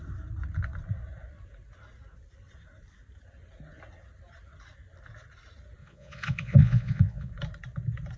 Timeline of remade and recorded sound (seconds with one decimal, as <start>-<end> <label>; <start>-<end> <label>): 0.0-5.8 recorded; 5.8-7.3 remade; 7.3-8.2 recorded